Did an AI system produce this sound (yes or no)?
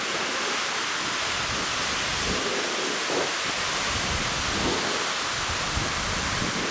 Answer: no